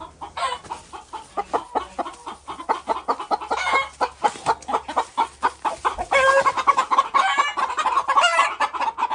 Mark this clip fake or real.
real